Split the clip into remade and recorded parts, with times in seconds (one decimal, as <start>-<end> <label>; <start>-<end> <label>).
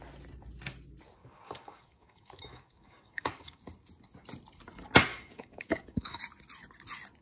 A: 0.0-1.2 recorded; 1.2-3.6 remade; 3.6-5.1 recorded; 5.1-6.2 remade; 6.2-7.2 recorded